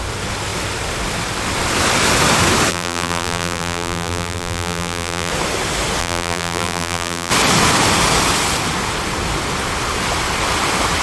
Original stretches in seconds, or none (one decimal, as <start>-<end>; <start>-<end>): 0.0-2.7; 5.3-6.0; 7.3-11.0